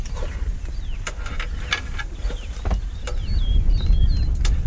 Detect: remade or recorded recorded